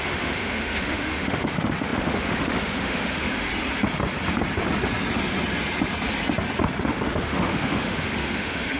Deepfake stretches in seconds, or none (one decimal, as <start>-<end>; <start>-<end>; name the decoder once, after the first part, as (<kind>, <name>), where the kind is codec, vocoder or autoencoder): 0.0-3.5 (autoencoder, DAC-VAE); 6.9-8.8